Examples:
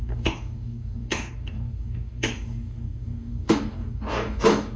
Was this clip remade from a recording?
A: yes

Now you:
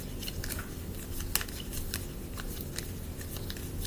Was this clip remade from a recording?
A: no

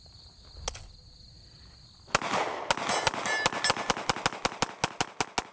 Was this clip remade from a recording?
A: no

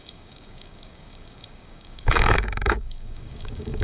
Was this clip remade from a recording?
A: yes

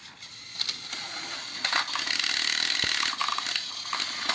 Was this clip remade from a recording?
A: no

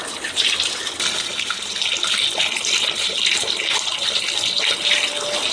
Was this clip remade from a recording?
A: no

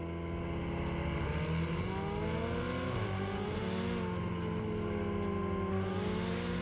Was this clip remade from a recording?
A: no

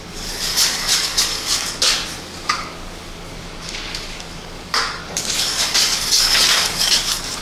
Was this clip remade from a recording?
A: yes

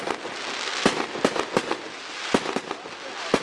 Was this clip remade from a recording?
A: no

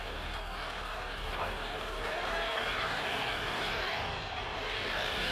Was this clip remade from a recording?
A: yes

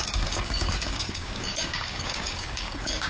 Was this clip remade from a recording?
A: yes